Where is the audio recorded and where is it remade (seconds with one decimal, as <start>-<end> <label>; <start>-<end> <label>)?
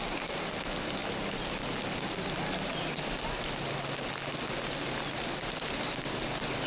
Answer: 0.0-6.7 recorded